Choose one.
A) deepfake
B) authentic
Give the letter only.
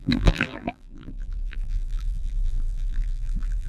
A